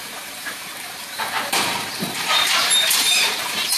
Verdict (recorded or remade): remade